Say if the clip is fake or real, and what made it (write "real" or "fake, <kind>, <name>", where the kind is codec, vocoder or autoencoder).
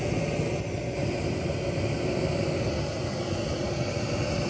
real